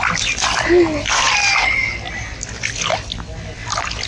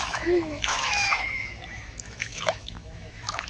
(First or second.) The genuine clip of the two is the first